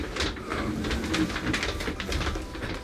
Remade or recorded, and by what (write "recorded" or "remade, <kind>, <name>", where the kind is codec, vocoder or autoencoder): recorded